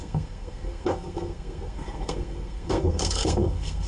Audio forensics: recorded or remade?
remade